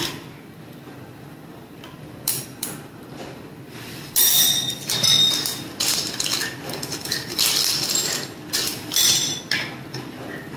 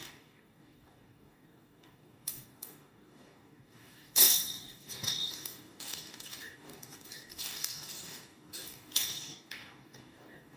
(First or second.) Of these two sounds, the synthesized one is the second